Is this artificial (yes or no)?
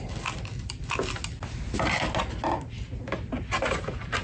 no